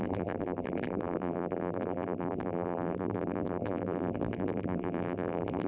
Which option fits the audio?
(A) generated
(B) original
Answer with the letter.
A